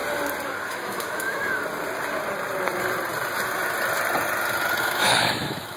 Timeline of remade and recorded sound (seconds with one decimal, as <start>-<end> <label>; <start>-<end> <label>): 0.0-0.7 recorded; 0.7-1.5 remade; 1.5-4.8 recorded; 4.8-5.8 remade